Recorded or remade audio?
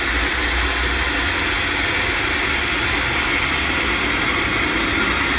recorded